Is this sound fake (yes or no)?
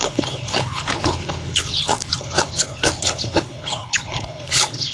yes